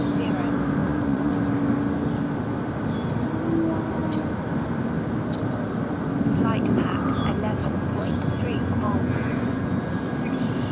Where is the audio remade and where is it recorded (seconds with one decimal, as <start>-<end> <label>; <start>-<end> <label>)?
0.0-0.8 recorded; 0.8-1.3 remade; 1.3-7.6 recorded; 7.6-10.1 remade; 10.1-10.7 recorded

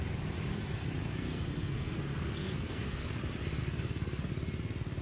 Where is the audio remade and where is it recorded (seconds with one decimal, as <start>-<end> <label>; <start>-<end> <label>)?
0.0-1.0 recorded; 1.0-3.2 remade; 3.2-3.6 recorded; 3.6-4.3 remade; 4.3-5.0 recorded

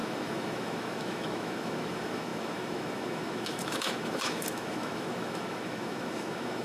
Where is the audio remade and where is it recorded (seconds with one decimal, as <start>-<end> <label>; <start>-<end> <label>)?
0.0-6.6 remade

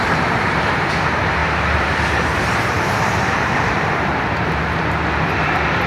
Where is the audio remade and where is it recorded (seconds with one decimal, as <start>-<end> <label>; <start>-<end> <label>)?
0.0-1.4 recorded; 1.4-4.9 remade; 4.9-5.9 recorded

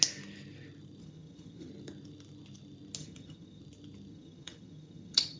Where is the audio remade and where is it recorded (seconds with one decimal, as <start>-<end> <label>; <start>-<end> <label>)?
0.0-1.0 recorded; 1.0-1.7 remade; 1.7-3.0 recorded; 3.0-3.6 remade; 3.6-4.1 recorded; 4.1-5.4 remade

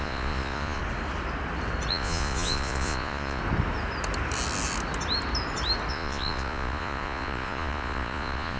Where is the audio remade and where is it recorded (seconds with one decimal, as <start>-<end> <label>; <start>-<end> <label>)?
0.0-0.8 remade; 0.8-1.9 recorded; 1.9-3.4 remade; 3.4-5.9 recorded; 5.9-8.6 remade

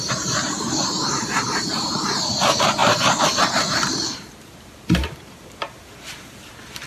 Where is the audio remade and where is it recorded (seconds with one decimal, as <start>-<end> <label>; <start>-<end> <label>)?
0.0-6.9 remade